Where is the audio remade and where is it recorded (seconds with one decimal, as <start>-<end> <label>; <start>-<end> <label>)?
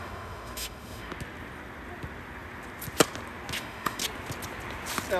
0.0-1.1 remade; 1.1-3.6 recorded; 3.6-4.0 remade; 4.0-5.2 recorded